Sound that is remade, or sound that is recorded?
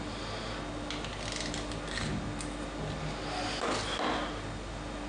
recorded